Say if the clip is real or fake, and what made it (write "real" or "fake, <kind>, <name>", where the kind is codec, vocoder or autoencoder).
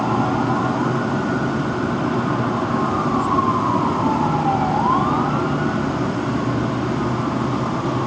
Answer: real